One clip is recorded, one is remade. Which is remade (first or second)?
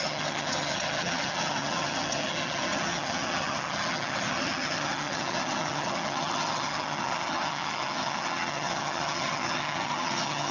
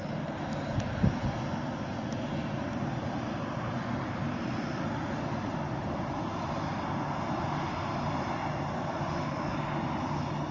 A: first